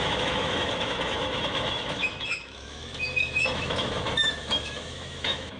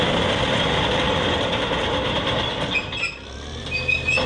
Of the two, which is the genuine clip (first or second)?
second